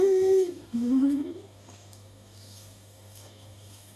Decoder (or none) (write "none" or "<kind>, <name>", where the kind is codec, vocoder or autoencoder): codec, DAC